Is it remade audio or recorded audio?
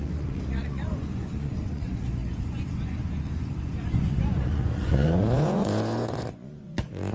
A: remade